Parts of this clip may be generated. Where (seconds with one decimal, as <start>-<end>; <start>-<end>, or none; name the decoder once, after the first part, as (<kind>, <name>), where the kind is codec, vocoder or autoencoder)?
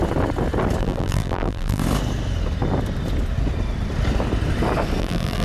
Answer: 0.8-1.8 (vocoder, BigVGAN v2); 5.0-5.4